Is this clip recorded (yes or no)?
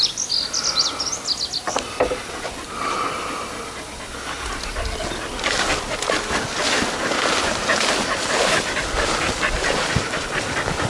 yes